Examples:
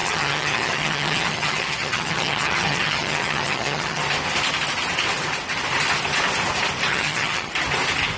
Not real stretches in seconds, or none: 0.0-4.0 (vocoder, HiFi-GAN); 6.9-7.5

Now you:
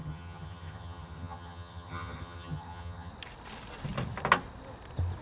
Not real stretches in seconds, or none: 0.0-3.1 (vocoder, HiFi-GAN)

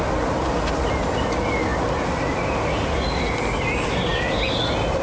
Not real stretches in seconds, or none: none

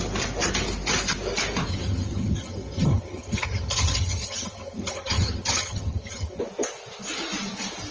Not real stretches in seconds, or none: 1.7-6.4 (vocoder, HiFi-GAN)

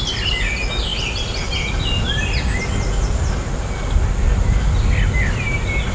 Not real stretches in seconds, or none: none